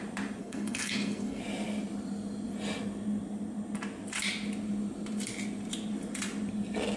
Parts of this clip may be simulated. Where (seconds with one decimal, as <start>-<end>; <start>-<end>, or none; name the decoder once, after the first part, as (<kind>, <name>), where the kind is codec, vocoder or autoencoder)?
0.4-1.4 (codec, SNAC)